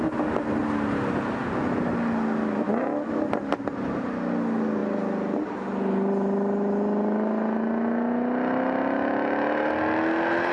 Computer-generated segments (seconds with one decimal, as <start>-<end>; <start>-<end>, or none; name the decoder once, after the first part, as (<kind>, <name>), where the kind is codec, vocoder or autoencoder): none